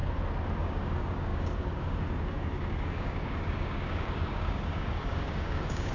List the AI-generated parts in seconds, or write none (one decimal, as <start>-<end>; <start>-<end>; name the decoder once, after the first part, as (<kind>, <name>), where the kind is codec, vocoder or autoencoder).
0.6-5.9 (codec, DAC)